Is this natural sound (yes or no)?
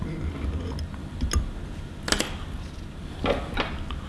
yes